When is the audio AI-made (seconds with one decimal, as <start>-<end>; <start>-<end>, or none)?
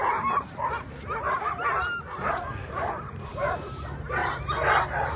2.6-3.7; 4.2-5.2